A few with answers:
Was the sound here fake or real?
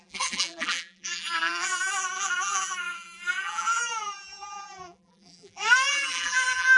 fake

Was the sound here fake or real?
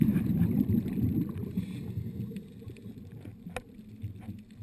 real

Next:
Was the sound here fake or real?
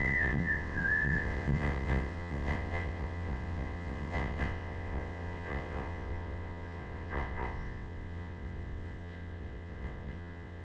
fake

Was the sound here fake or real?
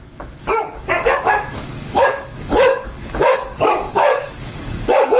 fake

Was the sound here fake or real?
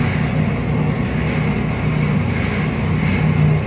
real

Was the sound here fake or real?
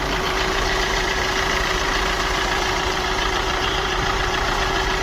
fake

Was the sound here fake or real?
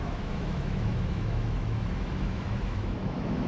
fake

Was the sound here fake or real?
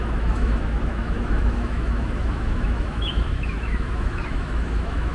fake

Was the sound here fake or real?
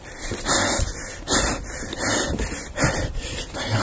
real